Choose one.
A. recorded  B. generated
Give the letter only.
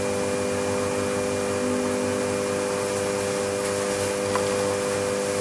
A